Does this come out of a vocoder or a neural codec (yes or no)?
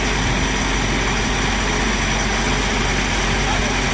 no